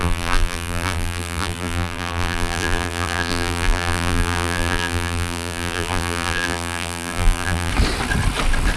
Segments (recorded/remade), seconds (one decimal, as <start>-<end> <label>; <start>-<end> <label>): 0.0-7.7 remade; 7.7-8.8 recorded